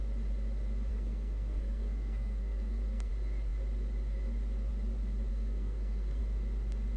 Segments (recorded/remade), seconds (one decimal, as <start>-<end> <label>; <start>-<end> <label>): 0.0-0.9 recorded; 0.9-3.1 remade; 3.1-5.3 recorded; 5.3-6.2 remade; 6.2-7.0 recorded